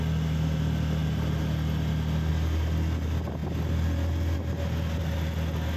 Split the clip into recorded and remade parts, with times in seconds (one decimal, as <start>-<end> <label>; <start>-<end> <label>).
0.0-5.8 recorded